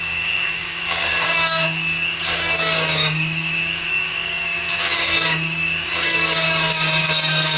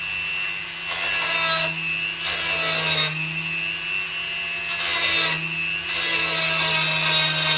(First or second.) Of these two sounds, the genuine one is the second